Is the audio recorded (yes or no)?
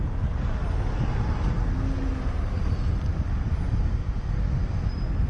yes